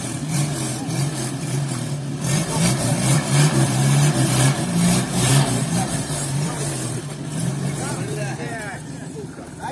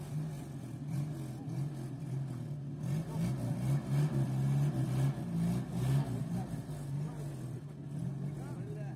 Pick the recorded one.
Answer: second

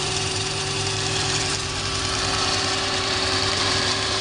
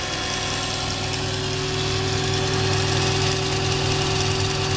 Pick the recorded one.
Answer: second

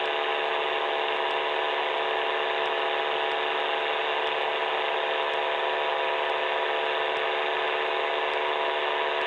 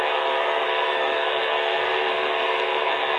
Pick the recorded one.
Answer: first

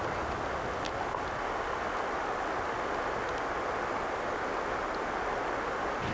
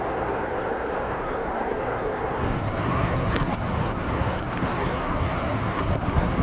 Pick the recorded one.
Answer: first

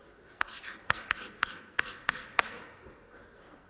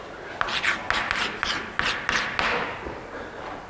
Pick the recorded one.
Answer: second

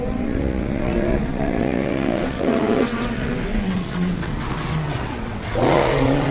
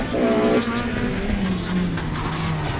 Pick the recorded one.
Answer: second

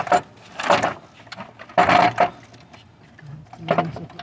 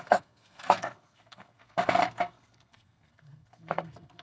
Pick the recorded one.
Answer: first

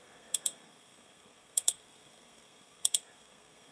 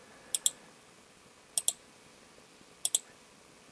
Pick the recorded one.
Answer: second